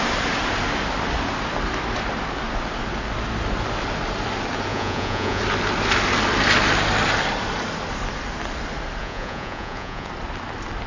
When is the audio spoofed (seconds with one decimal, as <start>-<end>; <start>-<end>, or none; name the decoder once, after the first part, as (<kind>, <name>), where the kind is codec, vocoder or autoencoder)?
4.7-5.4 (vocoder, Vocos); 9.0-10.1